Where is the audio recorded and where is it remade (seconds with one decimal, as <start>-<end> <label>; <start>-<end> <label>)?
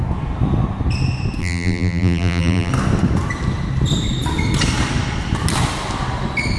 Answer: 0.0-1.4 recorded; 1.4-2.7 remade; 2.7-6.6 recorded